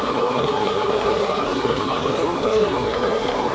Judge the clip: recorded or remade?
remade